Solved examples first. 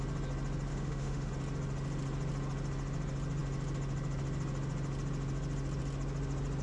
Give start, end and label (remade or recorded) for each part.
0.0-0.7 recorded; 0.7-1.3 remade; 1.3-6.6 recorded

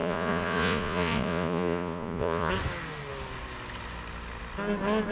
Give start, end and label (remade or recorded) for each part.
0.0-2.5 remade; 2.5-5.1 recorded